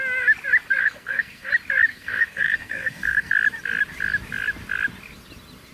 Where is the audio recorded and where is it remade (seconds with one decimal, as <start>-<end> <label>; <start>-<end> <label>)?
0.0-0.8 recorded; 0.8-1.5 remade; 1.5-1.9 recorded; 1.9-3.3 remade; 3.3-5.7 recorded